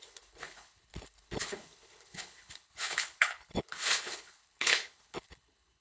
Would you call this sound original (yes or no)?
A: no